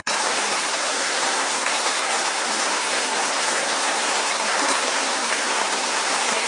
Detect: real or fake fake